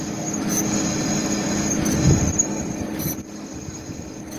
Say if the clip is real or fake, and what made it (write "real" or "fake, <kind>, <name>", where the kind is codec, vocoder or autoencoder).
real